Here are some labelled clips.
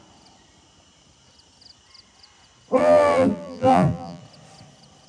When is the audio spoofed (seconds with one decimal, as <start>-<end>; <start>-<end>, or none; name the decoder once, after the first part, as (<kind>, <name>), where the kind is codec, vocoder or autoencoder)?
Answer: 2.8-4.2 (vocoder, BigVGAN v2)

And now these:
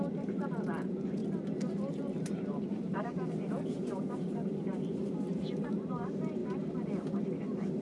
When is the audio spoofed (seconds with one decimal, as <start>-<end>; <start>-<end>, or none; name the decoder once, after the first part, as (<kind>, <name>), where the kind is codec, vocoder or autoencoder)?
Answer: 0.0-1.2 (vocoder, BigVGAN v2); 1.9-6.4

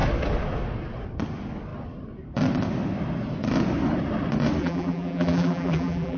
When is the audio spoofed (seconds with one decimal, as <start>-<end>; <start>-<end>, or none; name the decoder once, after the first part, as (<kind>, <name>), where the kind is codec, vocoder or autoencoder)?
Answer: 4.6-6.2 (vocoder, BigVGAN v2)

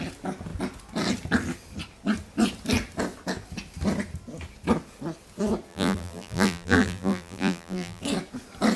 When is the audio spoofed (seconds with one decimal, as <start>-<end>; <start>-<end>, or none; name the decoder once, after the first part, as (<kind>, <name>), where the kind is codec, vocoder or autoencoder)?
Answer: 5.7-8.0 (vocoder, BigVGAN v2)

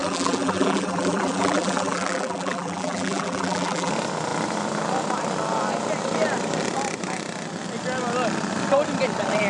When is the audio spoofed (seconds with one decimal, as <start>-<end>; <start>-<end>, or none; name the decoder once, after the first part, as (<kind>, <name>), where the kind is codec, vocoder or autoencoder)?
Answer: 0.0-3.9 (vocoder, BigVGAN v2)